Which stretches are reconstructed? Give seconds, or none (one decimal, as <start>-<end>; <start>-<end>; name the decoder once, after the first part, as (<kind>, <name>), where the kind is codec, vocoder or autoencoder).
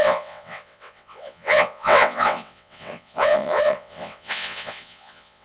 0.0-5.4 (vocoder, WaveNeXt)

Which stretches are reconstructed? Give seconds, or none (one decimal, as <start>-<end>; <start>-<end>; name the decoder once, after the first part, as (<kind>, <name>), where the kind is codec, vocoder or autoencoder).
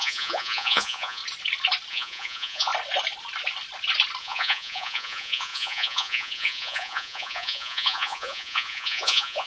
0.0-1.2 (vocoder, Vocos); 1.9-2.7; 4.2-9.5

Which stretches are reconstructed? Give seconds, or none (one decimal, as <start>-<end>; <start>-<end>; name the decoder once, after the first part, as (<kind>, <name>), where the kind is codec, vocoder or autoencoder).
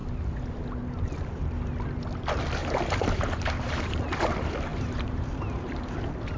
2.6-4.0 (vocoder, BigVGAN v2); 4.7-5.8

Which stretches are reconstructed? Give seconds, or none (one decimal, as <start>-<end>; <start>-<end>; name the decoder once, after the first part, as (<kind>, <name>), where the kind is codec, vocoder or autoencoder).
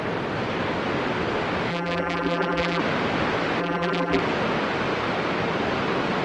1.7-2.8 (vocoder, BigVGAN v2); 3.6-4.2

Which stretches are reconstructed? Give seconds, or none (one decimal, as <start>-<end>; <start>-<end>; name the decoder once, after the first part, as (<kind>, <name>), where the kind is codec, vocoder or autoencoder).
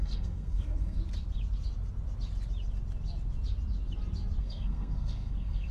0.0-1.0 (codec, SNAC); 4.4-5.7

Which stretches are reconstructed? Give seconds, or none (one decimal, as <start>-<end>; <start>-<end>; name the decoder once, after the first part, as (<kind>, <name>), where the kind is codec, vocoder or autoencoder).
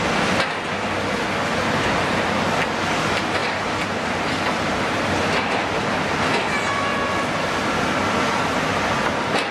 3.4-5.0 (vocoder, BigVGAN v2)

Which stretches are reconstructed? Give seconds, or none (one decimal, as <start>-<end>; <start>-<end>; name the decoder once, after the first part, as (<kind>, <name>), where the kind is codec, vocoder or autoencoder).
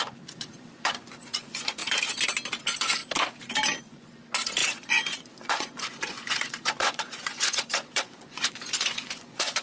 0.0-1.8 (vocoder, Vocos); 2.6-3.0; 3.8-9.6